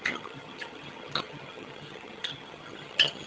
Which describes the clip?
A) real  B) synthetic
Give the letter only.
B